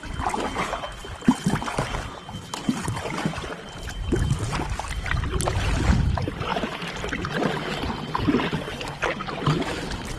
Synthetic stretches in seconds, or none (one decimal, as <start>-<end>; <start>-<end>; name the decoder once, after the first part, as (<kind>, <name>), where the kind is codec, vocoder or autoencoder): 6.5-7.3 (vocoder, BigVGAN v2)